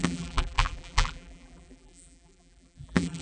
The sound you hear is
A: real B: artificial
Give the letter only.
B